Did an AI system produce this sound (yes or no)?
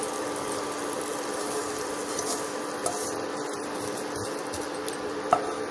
no